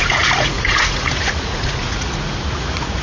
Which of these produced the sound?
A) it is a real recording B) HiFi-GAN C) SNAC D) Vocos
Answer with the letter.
D